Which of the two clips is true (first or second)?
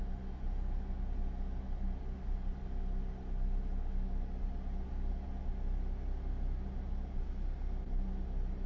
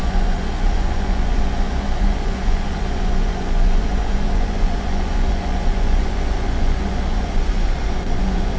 first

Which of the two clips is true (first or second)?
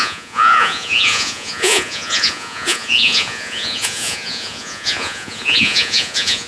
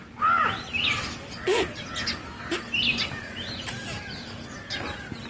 second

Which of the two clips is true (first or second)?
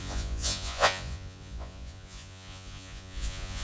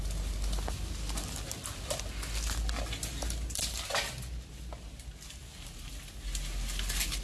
second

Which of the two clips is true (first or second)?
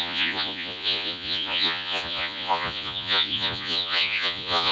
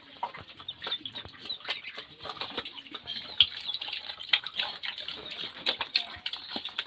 second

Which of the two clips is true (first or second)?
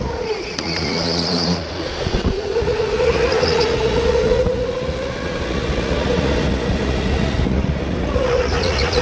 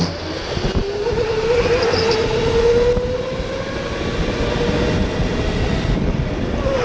second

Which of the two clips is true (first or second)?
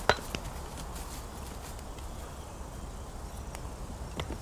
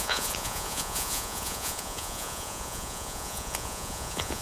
first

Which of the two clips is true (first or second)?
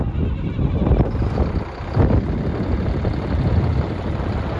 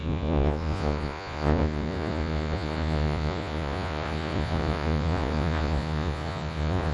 first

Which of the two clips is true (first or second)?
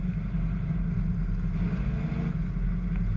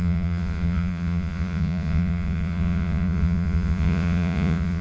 first